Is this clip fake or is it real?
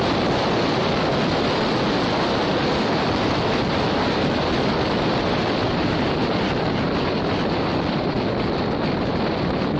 real